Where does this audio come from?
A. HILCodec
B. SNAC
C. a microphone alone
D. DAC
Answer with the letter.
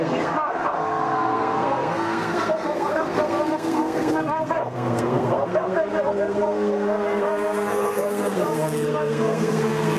B